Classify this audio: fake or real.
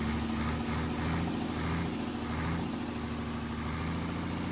real